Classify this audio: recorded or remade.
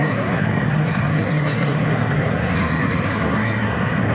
remade